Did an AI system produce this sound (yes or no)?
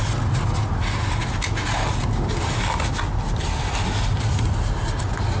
no